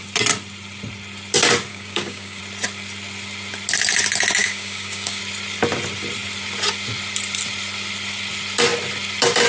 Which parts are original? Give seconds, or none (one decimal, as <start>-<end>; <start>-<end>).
0.0-1.7; 2.4-4.4; 5.2-9.5